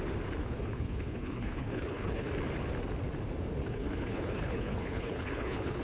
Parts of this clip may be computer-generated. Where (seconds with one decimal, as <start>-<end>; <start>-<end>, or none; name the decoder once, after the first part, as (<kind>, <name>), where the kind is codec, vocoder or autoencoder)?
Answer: 0.4-2.3 (codec, HILCodec); 3.6-5.8